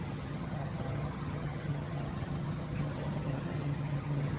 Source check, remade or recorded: remade